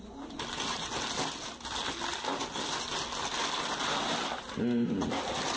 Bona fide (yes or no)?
yes